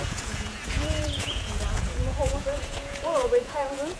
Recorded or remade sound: remade